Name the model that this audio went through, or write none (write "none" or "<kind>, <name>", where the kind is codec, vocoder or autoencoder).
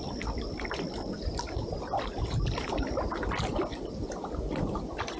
none